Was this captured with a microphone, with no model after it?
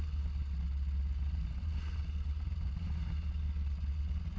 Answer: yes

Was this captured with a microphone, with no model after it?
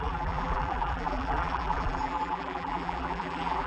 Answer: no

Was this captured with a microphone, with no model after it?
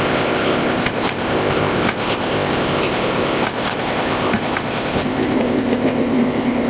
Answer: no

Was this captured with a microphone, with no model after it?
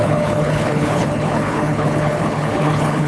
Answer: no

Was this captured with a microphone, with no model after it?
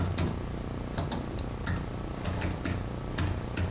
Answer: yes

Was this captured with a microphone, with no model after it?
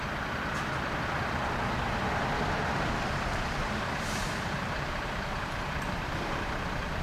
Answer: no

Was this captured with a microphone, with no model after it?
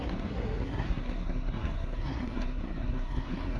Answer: no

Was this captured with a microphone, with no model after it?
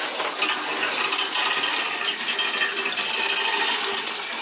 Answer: yes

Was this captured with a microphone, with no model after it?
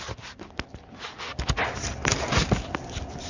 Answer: yes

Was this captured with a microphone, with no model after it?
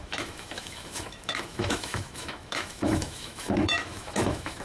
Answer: no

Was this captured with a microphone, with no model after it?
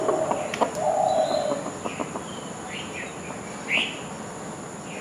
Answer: yes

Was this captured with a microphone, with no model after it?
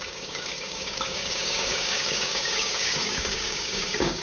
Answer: no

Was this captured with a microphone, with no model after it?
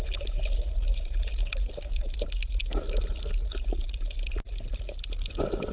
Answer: yes